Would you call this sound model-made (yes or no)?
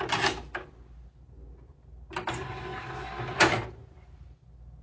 no